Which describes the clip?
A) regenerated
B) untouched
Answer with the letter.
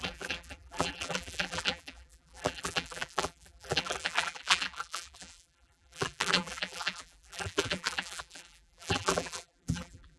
A